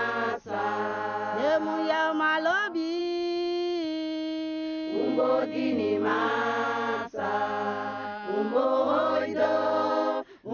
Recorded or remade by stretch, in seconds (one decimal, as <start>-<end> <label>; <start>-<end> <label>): 0.0-10.5 recorded